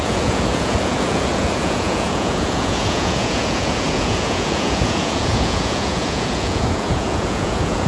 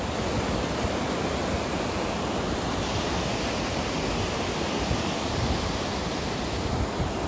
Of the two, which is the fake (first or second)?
first